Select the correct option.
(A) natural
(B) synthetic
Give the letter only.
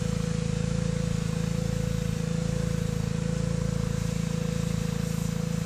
A